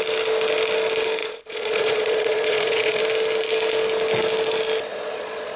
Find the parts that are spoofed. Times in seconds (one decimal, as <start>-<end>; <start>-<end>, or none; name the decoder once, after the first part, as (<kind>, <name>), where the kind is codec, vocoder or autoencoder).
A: 1.2-3.0 (vocoder, Vocos); 4.9-5.6